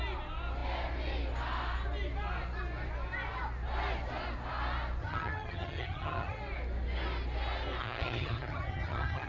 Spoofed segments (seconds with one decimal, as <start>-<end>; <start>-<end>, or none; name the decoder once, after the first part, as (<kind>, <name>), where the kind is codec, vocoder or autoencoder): 5.0-6.4 (vocoder, HiFi-GAN); 7.8-9.3